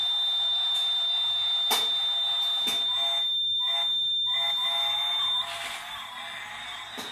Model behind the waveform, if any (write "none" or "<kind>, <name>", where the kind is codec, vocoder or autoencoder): none